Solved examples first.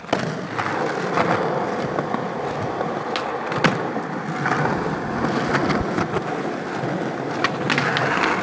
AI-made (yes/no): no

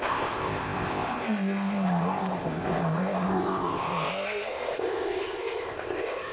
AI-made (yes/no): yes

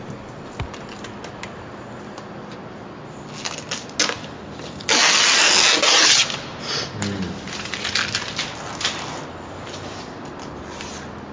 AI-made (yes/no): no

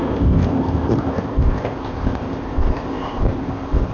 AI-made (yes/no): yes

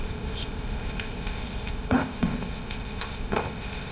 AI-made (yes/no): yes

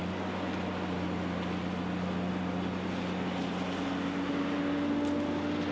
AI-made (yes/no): no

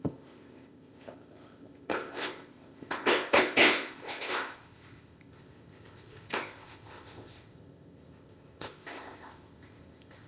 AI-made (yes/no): yes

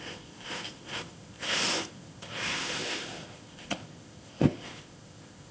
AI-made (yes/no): yes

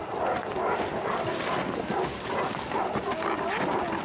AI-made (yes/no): no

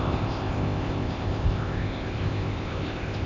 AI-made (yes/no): yes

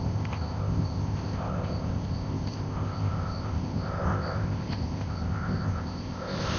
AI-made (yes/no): yes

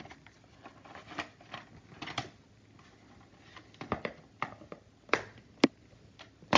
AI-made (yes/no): no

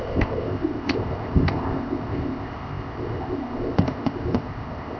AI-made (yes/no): yes